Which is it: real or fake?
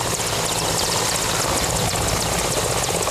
real